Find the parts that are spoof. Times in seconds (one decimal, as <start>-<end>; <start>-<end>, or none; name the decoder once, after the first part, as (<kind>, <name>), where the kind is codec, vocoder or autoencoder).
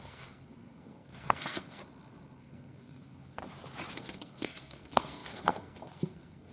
0.0-1.8 (codec, SNAC); 2.4-3.4; 3.9-6.5